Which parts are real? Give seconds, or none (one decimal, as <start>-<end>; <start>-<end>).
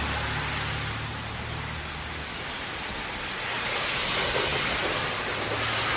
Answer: 0.0-6.0